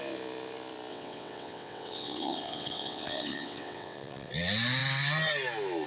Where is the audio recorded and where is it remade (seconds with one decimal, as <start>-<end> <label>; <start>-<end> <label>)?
0.0-0.9 recorded; 0.9-4.3 remade; 4.3-5.9 recorded